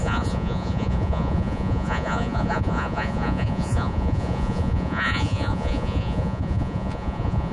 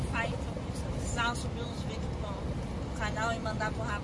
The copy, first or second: first